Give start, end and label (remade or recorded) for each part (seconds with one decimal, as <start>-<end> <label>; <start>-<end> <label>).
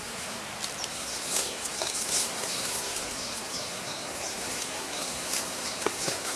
0.0-0.4 remade; 0.4-0.9 recorded; 0.9-6.4 remade